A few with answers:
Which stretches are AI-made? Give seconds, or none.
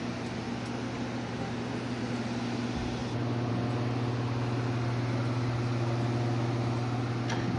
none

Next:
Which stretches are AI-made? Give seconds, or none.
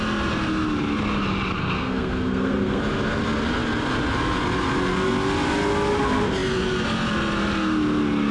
1.6-2.8 (codec, SNAC)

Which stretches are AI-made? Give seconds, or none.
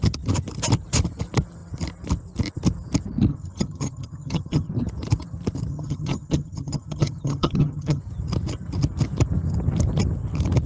3.3-4.7 (vocoder, HiFi-GAN); 5.7-8.0